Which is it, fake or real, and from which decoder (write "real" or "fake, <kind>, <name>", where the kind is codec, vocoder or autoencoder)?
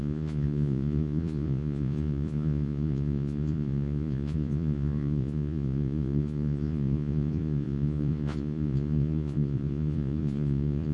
fake, vocoder, Vocos